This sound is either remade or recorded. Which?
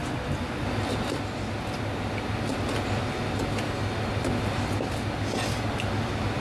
recorded